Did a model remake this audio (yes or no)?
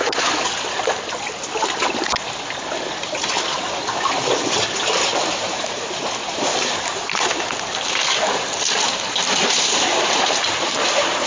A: no